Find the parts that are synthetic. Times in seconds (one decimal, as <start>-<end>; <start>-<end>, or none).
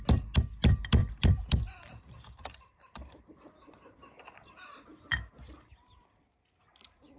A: 1.0-5.3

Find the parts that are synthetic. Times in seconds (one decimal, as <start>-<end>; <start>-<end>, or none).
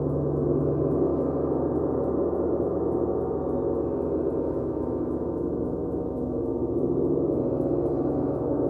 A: 0.6-1.1; 4.4-6.6; 8.1-8.7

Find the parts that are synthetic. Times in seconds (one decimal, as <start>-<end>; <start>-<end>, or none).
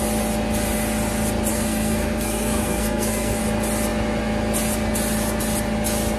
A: 1.5-3.4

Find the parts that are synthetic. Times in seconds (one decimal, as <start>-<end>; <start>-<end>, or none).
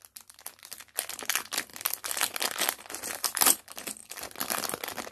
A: 1.7-2.8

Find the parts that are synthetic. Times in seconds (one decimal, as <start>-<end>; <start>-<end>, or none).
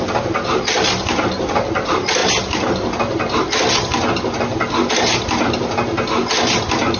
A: none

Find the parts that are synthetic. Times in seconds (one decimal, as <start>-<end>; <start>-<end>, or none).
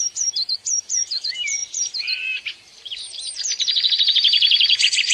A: 0.0-5.1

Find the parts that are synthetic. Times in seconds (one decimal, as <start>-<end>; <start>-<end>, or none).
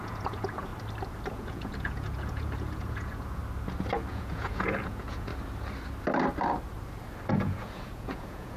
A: 0.0-0.7; 1.3-3.4; 4.1-5.3; 7.3-8.6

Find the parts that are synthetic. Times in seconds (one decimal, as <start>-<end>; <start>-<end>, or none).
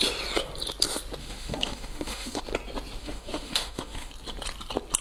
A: 1.2-2.4; 3.0-4.1